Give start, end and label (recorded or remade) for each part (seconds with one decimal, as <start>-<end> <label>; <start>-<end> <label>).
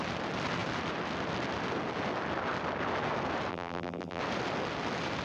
0.0-3.5 recorded; 3.5-4.2 remade; 4.2-5.2 recorded